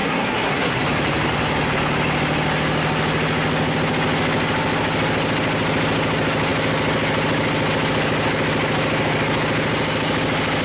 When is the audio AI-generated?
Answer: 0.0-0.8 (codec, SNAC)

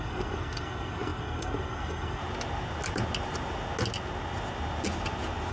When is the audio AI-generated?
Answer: 0.0-2.2 (codec, SNAC)

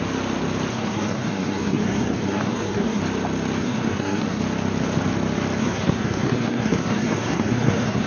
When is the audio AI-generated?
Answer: 0.7-3.0 (codec, SNAC); 3.6-4.4; 5.6-8.1